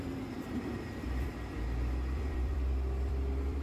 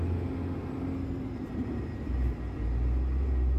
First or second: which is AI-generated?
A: first